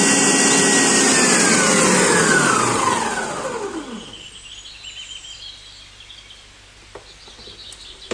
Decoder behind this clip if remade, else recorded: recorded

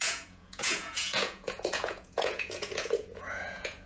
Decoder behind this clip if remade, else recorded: remade, vocoder, Vocos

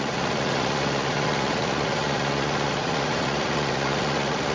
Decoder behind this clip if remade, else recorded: remade, vocoder, Vocos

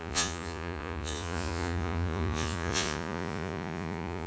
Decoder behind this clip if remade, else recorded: remade, vocoder, Vocos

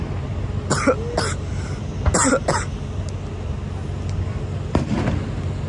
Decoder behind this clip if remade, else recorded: recorded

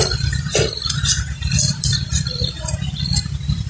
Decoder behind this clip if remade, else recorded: recorded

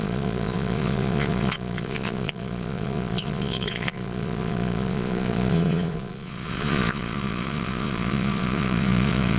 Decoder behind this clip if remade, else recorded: remade, vocoder, Vocos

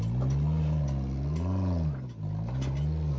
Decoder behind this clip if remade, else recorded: recorded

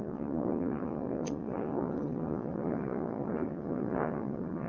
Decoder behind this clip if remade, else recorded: remade, vocoder, Vocos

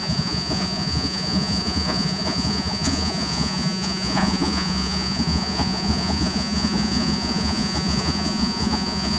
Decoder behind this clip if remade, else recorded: remade, vocoder, Vocos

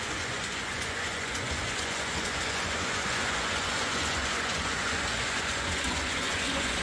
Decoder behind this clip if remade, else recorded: remade, vocoder, Vocos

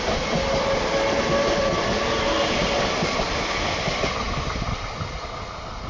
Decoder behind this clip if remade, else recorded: recorded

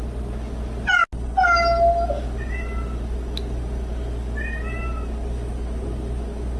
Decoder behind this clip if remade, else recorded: recorded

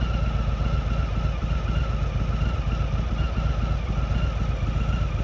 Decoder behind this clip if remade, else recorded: recorded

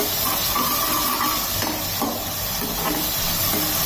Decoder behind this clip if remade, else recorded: recorded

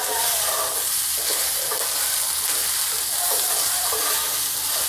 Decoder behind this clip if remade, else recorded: recorded